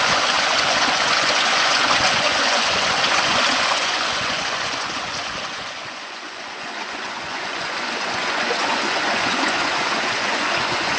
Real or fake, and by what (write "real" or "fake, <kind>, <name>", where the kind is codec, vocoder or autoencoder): fake, vocoder, Vocos